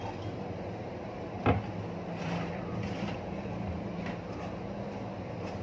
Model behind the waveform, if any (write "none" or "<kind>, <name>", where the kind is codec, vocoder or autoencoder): none